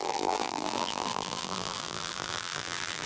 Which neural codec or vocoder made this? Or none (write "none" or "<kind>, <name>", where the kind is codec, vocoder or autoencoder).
vocoder, BigVGAN v2